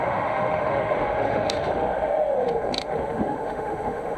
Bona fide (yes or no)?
no